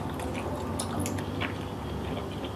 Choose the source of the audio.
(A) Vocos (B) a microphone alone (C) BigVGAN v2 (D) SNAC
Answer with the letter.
B